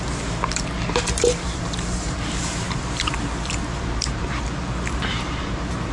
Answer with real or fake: fake